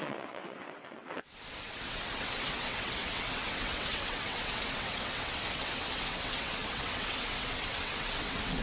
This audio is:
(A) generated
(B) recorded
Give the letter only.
A